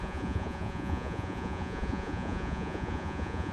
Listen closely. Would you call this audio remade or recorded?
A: remade